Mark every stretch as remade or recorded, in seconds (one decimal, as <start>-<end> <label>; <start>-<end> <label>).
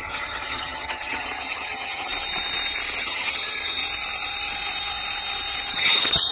0.0-2.1 remade; 2.1-3.0 recorded; 3.0-3.8 remade; 3.8-5.7 recorded; 5.7-6.3 remade